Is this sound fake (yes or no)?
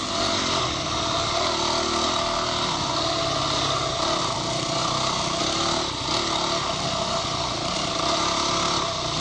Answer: no